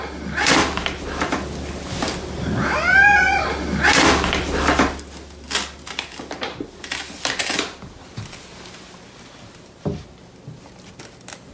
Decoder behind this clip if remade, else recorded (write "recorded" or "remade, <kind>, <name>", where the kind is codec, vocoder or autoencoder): recorded